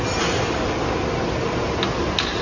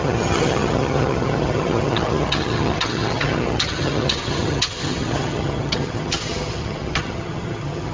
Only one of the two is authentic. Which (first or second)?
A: first